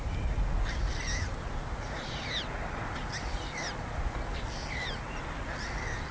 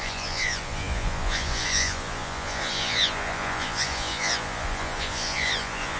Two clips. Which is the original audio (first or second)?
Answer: first